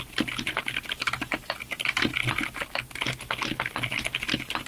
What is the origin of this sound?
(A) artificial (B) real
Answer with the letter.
B